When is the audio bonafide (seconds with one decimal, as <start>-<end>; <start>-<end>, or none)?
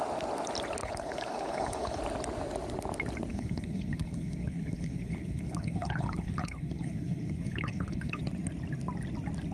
0.0-0.8; 2.0-3.3; 8.2-9.5